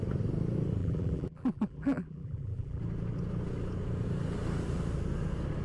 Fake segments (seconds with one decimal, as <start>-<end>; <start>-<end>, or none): 0.8-2.8